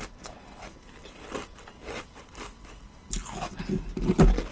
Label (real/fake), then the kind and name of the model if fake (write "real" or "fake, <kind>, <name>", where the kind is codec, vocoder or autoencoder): real